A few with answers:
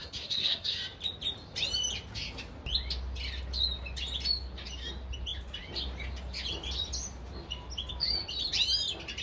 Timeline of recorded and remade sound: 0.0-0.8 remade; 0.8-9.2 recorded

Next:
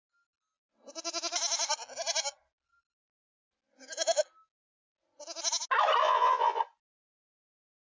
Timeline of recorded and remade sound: 0.0-6.0 recorded; 6.0-6.6 remade; 6.6-7.9 recorded

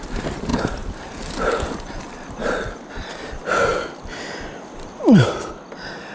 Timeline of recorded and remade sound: 0.0-6.1 recorded

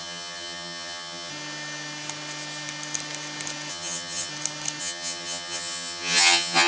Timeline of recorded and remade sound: 0.0-1.3 remade; 1.3-3.7 recorded; 3.7-4.3 remade; 4.3-4.8 recorded; 4.8-6.7 remade

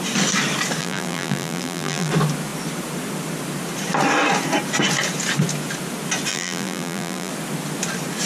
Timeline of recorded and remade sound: 0.0-0.8 recorded; 0.8-2.1 remade; 2.1-6.3 recorded; 6.3-7.3 remade; 7.3-8.3 recorded

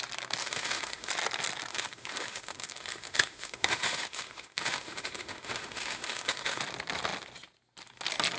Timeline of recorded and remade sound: 0.0-0.4 recorded; 0.4-1.1 remade; 1.1-1.7 recorded; 1.7-6.6 remade; 6.6-8.4 recorded

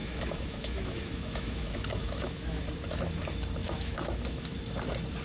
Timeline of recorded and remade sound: 0.0-2.6 remade; 2.6-3.6 recorded; 3.6-4.6 remade; 4.6-5.2 recorded